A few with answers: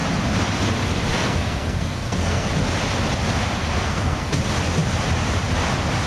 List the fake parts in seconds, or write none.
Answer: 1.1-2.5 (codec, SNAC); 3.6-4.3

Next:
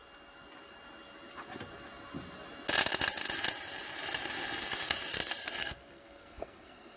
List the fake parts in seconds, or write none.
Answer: 5.6-7.0 (codec, SNAC)

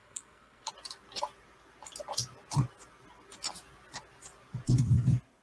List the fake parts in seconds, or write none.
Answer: 0.0-0.7 (codec, SNAC)

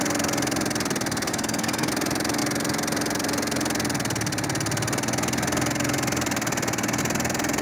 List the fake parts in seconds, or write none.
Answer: 1.3-1.9 (codec, SNAC)

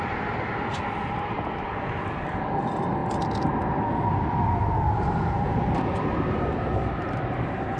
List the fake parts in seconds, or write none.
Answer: none

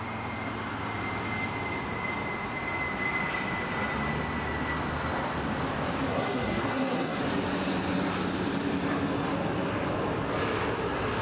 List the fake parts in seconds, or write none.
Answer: 6.1-7.2 (codec, SNAC)